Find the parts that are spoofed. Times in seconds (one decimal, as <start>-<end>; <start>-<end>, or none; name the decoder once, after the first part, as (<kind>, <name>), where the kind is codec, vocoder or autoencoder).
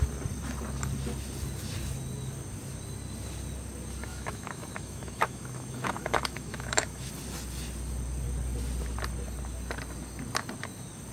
4.1-7.1 (autoencoder, DAC-VAE)